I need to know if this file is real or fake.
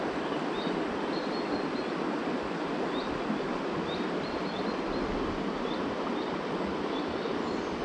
real